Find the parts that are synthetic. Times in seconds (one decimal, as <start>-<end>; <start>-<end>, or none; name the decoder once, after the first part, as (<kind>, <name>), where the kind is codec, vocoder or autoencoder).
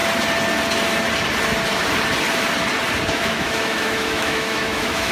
3.1-5.1 (autoencoder, DAC-VAE)